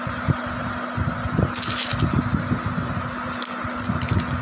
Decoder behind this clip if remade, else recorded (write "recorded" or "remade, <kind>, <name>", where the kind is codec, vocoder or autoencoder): recorded